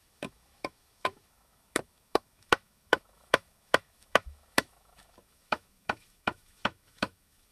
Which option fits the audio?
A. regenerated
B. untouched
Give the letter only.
A